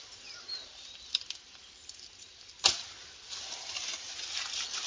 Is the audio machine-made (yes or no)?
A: no